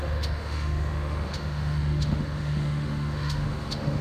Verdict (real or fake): fake